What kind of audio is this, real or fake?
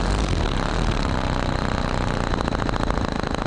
real